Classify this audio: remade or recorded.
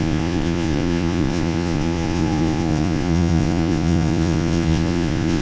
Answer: remade